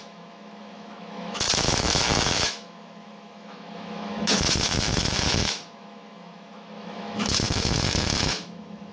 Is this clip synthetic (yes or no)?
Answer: yes